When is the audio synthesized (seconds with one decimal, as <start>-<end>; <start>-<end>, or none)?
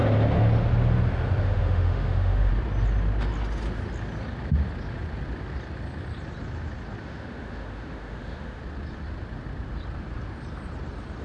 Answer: 1.4-2.5; 7.0-8.6